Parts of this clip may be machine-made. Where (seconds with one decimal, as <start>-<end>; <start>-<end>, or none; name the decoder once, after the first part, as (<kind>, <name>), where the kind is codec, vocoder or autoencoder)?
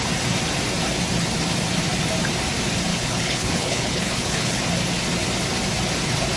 2.9-4.6 (codec, HILCodec)